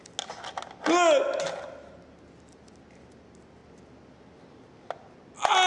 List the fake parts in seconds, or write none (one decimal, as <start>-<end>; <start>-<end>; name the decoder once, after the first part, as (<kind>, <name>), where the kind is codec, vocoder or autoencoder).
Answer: none